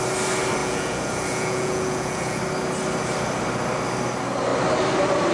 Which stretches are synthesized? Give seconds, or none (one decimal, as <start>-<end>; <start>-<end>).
0.6-2.4